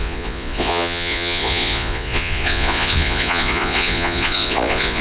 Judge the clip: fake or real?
fake